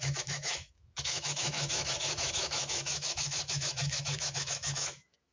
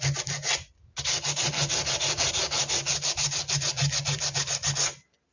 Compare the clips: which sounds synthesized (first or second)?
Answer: first